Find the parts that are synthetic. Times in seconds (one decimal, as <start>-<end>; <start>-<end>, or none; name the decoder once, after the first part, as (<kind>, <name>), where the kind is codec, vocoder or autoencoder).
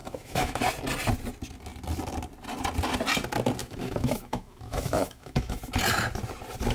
0.0-0.6 (autoencoder, DAC-VAE); 3.6-5.6